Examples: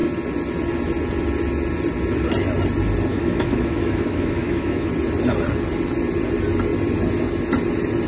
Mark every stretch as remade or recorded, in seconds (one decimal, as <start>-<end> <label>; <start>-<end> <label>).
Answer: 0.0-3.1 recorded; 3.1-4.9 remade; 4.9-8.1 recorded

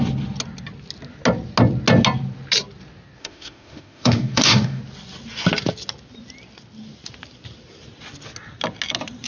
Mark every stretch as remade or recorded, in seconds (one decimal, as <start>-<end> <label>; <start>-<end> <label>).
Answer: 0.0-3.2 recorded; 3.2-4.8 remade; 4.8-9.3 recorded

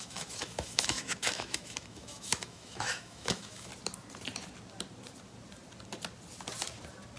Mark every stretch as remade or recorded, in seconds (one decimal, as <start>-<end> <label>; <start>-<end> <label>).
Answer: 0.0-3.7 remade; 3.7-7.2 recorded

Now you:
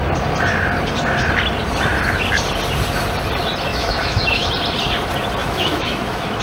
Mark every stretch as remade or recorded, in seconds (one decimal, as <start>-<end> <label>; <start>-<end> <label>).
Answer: 0.0-3.7 recorded; 3.7-4.5 remade; 4.5-5.4 recorded; 5.4-6.4 remade

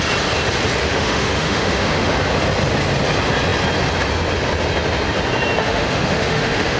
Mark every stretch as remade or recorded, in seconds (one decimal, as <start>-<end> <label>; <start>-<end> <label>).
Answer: 0.0-0.8 recorded; 0.8-2.1 remade; 2.1-5.6 recorded; 5.6-6.8 remade

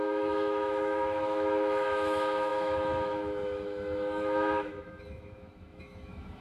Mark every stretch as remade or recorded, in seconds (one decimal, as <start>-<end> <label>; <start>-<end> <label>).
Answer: 0.0-6.4 remade

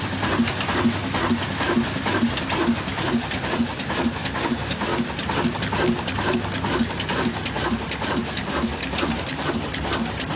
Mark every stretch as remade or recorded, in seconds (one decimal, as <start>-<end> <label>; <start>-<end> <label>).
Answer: 0.0-10.4 recorded